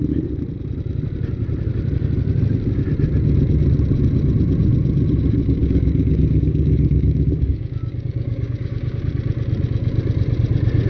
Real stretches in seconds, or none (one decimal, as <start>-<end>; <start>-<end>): 0.0-5.6; 9.0-10.9